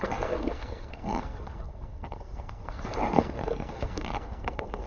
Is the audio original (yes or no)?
no